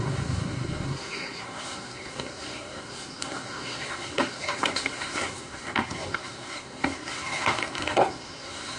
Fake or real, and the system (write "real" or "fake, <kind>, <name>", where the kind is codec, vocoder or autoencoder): fake, codec, SNAC